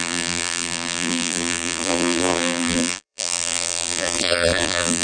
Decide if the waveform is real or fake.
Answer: fake